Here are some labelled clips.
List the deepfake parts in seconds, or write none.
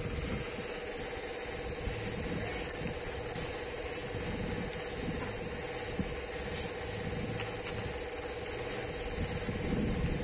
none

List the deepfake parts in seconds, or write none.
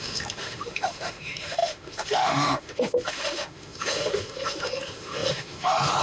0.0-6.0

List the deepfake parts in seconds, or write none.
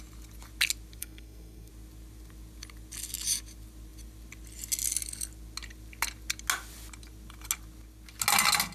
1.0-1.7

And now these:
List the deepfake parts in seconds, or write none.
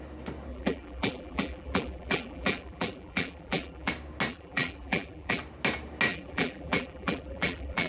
0.5-3.9; 4.3-5.4; 6.1-7.9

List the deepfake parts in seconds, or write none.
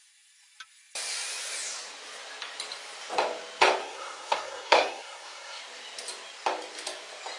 3.8-5.6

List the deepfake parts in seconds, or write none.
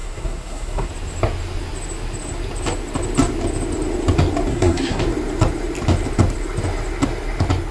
0.0-0.9; 4.5-5.0